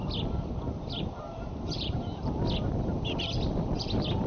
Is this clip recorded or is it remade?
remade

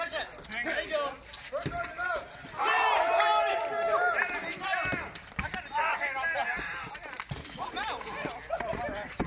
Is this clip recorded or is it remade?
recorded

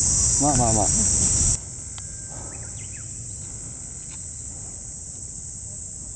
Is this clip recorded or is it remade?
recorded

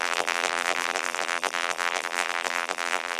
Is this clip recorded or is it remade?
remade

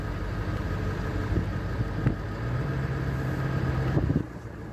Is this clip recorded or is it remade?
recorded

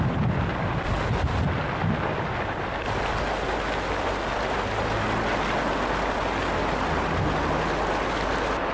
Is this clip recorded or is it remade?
recorded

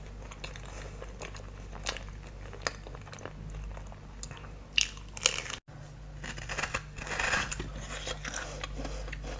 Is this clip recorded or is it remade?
recorded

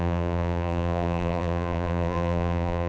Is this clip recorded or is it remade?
remade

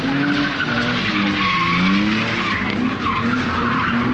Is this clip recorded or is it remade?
recorded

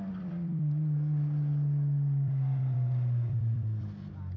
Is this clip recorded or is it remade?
remade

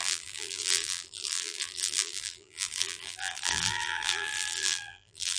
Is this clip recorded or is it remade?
remade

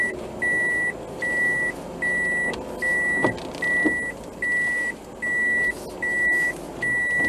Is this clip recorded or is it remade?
recorded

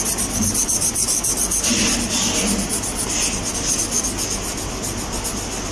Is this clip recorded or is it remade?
recorded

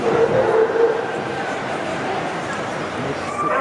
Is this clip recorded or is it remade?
remade